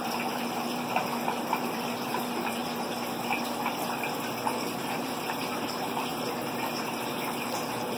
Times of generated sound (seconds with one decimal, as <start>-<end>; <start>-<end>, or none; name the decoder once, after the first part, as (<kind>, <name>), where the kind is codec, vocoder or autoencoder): 0.0-2.6 (vocoder, BigVGAN v2); 4.7-8.0